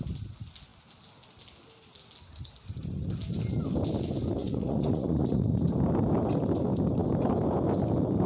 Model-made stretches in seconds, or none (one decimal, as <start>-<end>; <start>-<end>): 4.4-5.6